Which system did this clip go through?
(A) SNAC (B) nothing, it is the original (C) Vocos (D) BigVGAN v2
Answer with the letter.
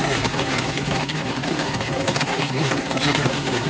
A